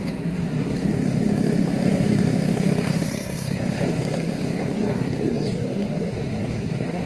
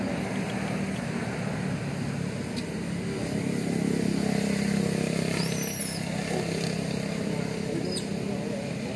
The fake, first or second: first